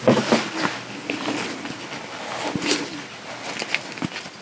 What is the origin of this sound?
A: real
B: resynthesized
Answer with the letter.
A